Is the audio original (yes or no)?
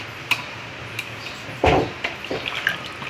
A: yes